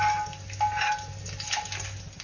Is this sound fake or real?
real